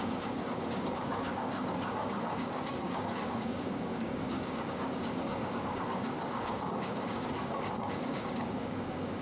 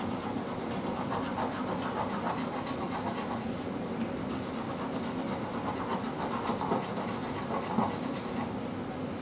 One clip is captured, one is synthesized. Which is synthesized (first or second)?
first